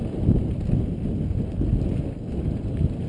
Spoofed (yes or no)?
no